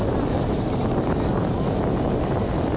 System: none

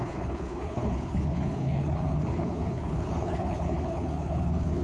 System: codec, HILCodec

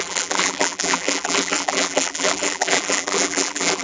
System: vocoder, BigVGAN v2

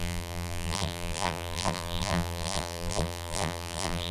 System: vocoder, BigVGAN v2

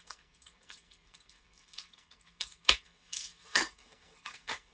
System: codec, SNAC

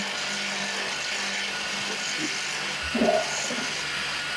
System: none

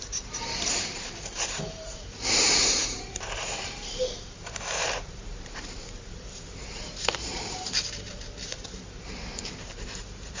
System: vocoder, BigVGAN v2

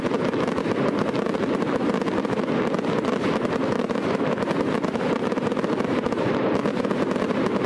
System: none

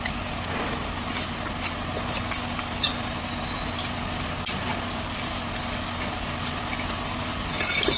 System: none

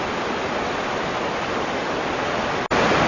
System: none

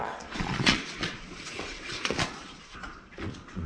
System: vocoder, Vocos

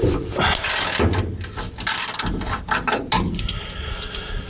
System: none